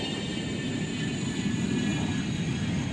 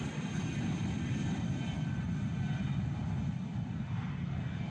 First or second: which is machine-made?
second